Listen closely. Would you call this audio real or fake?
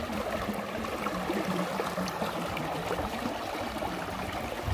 real